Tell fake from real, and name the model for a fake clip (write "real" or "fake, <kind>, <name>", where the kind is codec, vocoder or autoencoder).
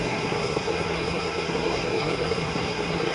fake, codec, SNAC